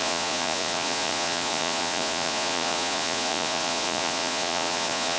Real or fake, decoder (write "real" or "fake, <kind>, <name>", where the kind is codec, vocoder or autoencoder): fake, vocoder, Vocos